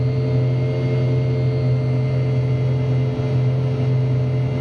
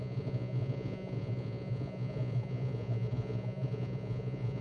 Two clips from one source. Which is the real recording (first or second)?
first